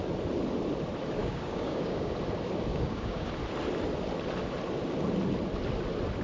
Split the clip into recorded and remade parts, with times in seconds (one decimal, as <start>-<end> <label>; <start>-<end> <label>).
0.0-1.2 recorded; 1.2-2.1 remade; 2.1-2.7 recorded; 2.7-3.3 remade; 3.3-6.2 recorded